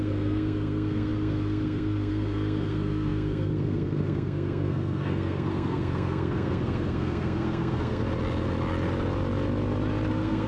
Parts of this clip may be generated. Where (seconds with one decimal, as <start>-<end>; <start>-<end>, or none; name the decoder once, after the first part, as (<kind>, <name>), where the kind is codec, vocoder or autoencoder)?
0.0-8.0 (codec, SNAC); 10.1-10.5